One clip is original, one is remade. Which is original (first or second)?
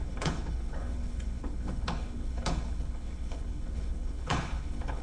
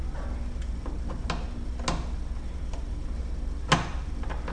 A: second